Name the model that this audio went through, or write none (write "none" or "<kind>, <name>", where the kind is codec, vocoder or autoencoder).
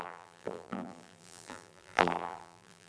vocoder, BigVGAN v2